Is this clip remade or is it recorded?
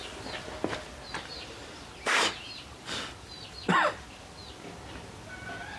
recorded